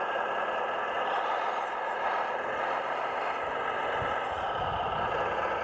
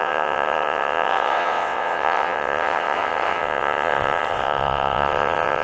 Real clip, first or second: first